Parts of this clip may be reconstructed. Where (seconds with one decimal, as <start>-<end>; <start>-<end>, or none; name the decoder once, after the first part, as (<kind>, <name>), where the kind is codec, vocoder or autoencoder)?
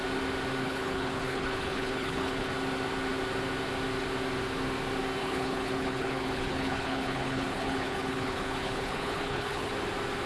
0.6-2.5 (codec, HILCodec); 5.2-9.7